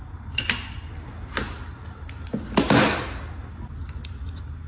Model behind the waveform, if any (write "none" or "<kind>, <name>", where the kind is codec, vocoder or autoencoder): none